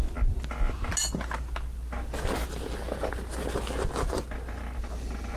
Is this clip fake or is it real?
real